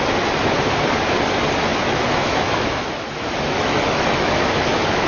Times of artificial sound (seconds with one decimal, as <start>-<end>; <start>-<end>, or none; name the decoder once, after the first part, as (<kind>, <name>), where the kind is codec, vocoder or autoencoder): 1.7-5.1 (autoencoder, DAC-VAE)

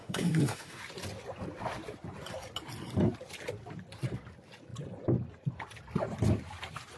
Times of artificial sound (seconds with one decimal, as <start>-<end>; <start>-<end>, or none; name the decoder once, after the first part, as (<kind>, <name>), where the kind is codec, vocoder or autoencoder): 0.0-0.8 (autoencoder, DAC-VAE)

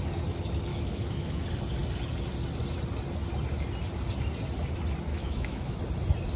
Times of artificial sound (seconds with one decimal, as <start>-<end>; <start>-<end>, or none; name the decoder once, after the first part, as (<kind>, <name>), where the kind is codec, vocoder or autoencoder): 0.7-1.4 (autoencoder, DAC-VAE); 5.1-5.8

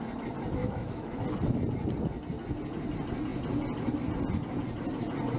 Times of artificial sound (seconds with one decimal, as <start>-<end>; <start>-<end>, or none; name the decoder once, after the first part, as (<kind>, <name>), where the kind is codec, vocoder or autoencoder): 0.6-1.2 (autoencoder, DAC-VAE)

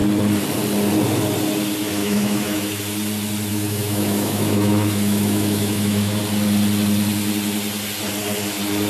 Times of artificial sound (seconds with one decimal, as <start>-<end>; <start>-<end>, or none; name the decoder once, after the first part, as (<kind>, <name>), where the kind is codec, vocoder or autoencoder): 2.0-2.8 (autoencoder, DAC-VAE); 3.5-6.2

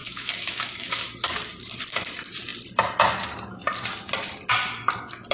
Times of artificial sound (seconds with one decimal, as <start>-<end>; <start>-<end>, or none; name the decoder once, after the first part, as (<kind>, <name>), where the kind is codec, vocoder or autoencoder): 0.0-1.1 (autoencoder, DAC-VAE)